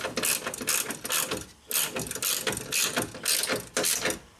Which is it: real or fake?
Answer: real